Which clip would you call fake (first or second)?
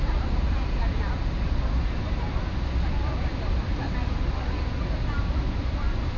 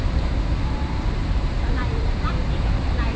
second